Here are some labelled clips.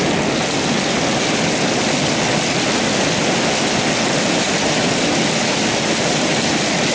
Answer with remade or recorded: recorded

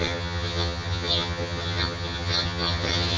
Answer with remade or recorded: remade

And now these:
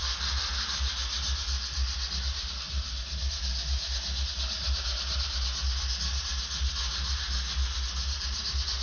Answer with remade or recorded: recorded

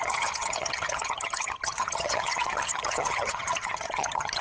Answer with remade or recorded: remade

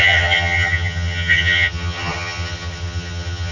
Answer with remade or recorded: remade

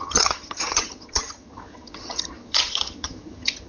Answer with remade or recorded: remade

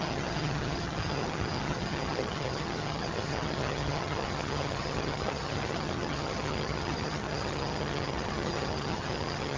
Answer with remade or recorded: remade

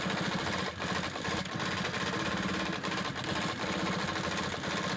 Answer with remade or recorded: recorded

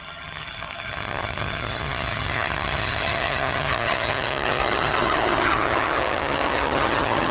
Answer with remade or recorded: remade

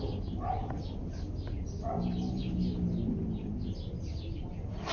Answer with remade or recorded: recorded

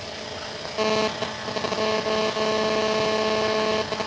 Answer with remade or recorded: recorded